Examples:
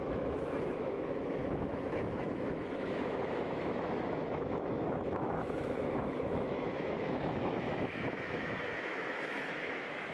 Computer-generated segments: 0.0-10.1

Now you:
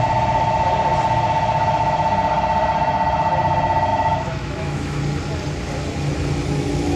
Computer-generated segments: 3.9-5.0

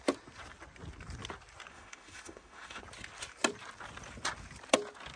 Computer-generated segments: 1.7-2.8

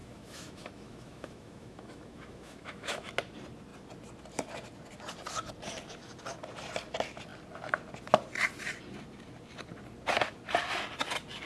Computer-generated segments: 0.0-3.1

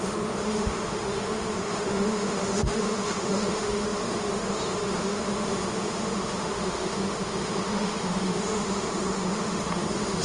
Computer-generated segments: 0.0-10.2

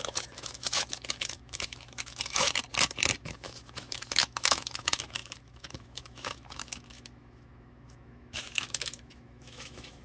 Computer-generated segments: 0.0-2.6; 3.2-10.0

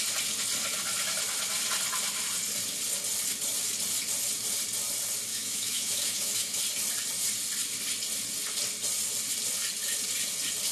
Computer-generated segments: 5.3-6.6

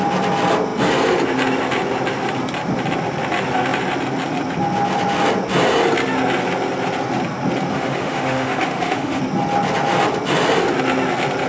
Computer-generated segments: 7.7-9.2